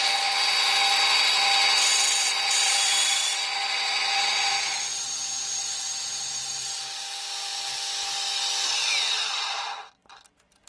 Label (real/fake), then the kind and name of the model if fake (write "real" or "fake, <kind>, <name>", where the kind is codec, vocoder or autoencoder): real